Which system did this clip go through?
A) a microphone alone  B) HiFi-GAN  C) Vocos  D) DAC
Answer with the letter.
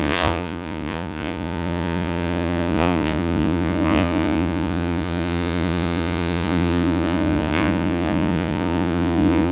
C